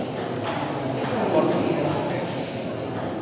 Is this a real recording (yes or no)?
yes